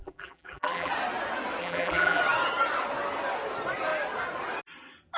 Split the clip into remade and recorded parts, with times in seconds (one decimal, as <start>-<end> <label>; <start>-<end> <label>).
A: 0.0-0.9 remade; 0.9-1.6 recorded; 1.6-2.2 remade; 2.2-5.2 recorded